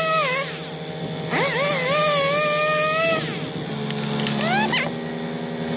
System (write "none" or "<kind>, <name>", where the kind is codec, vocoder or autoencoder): none